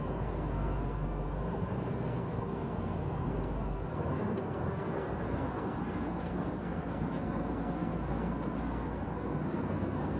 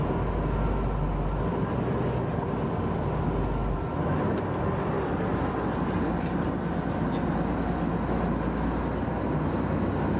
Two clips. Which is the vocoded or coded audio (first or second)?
first